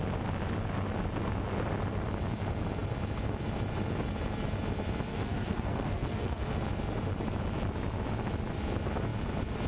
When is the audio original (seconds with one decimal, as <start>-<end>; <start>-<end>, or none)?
0.0-5.1; 6.6-9.7